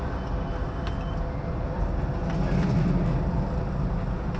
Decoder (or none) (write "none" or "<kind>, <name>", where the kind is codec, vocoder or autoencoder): none